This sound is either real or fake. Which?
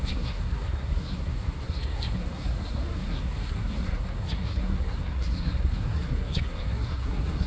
fake